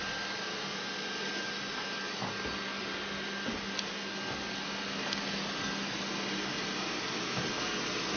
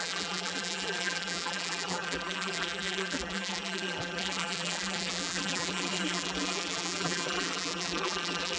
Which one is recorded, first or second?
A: first